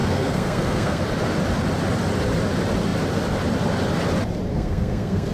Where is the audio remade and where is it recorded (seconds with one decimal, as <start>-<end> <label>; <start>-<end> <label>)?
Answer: 0.0-1.0 remade; 1.0-4.5 recorded; 4.5-5.3 remade